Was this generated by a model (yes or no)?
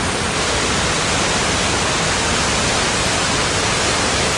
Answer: no